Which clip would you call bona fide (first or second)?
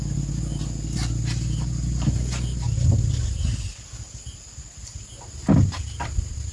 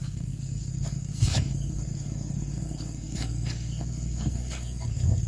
first